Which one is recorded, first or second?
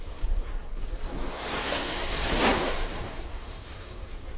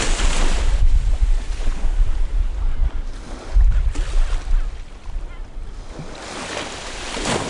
second